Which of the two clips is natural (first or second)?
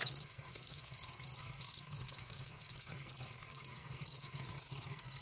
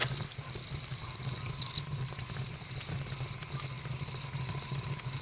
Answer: second